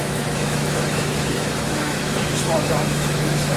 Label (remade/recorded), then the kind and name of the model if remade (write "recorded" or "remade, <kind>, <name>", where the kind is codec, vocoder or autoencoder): remade, autoencoder, DAC-VAE